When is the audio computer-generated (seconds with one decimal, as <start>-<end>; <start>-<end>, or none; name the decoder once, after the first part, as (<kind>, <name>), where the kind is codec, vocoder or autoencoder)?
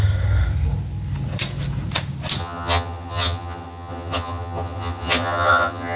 2.4-6.0 (vocoder, HiFi-GAN)